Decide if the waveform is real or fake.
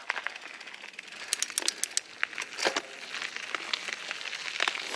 real